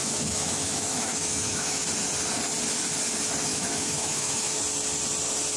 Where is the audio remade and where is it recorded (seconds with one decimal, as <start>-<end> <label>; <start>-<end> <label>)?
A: 0.0-1.8 remade; 1.8-3.5 recorded; 3.5-4.5 remade; 4.5-5.6 recorded